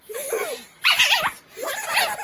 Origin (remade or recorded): recorded